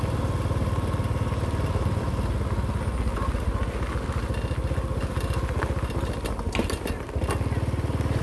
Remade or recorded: recorded